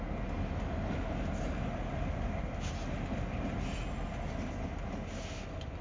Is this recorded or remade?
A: recorded